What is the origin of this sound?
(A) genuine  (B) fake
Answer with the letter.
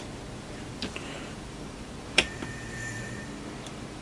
B